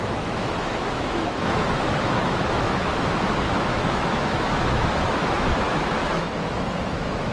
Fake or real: fake